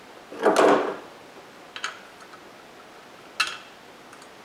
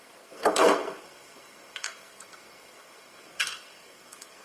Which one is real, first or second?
first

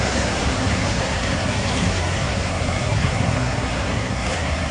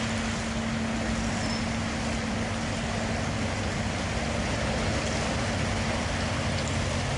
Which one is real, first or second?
second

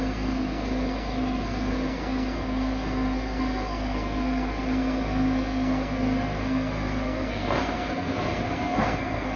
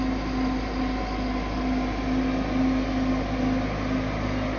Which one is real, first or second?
second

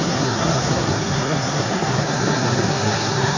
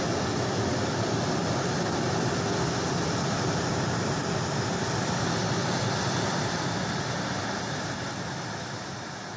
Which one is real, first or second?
second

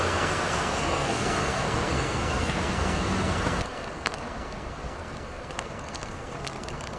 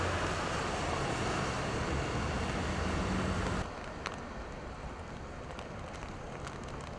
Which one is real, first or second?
second